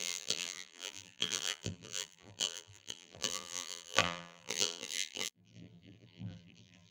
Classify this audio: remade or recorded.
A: remade